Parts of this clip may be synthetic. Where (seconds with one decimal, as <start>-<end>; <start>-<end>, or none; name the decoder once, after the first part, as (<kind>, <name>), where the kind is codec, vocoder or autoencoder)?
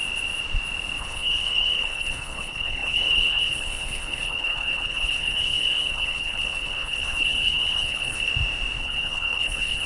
1.0-8.3 (codec, HILCodec); 8.8-9.9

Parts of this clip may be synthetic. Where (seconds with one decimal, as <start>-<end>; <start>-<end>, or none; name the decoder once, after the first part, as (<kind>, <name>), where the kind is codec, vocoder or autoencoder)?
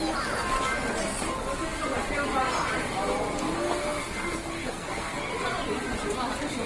4.6-5.2 (codec, SNAC)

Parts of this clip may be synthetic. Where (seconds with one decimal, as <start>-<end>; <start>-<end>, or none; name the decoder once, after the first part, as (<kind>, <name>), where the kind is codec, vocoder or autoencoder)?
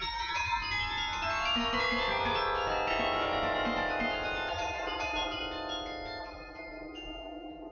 0.0-0.6 (vocoder, BigVGAN v2); 4.5-5.4; 6.2-7.7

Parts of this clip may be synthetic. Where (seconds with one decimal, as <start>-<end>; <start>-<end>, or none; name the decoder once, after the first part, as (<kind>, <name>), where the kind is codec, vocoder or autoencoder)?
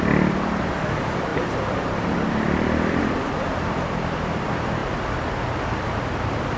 0.0-4.8 (vocoder, BigVGAN v2); 5.8-6.6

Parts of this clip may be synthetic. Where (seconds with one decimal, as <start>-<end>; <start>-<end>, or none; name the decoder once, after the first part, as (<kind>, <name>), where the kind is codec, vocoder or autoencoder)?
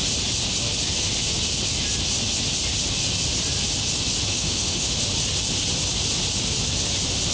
4.3-5.0 (autoencoder, DAC-VAE)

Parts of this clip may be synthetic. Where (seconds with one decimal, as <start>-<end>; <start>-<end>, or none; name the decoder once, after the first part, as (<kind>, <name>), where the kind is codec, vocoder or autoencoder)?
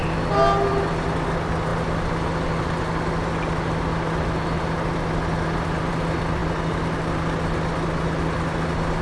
none